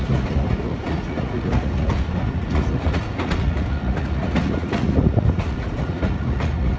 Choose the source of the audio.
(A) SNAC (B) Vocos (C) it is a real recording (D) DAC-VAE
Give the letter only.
B